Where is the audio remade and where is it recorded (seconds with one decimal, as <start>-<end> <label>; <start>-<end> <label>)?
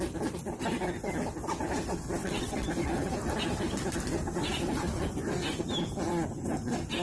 0.0-2.2 recorded; 2.2-2.7 remade; 2.7-7.0 recorded